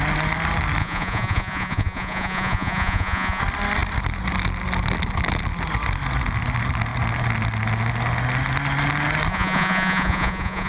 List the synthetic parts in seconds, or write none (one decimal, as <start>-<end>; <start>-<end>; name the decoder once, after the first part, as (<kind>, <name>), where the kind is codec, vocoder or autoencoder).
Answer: 0.8-3.4 (vocoder, Vocos); 9.3-10.7